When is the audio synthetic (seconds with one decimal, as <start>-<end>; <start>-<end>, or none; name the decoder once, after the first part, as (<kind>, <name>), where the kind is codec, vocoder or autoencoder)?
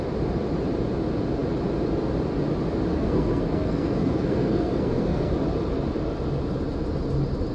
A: 2.9-5.3 (codec, SNAC)